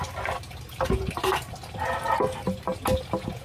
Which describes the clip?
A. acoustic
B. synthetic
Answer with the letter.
A